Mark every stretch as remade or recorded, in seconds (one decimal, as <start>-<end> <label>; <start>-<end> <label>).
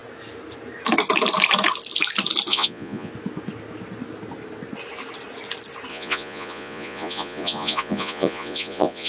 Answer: 0.0-2.5 recorded; 2.5-3.1 remade; 3.1-5.9 recorded; 5.9-9.1 remade